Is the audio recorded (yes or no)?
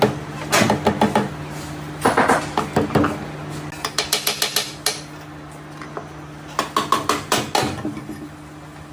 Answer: yes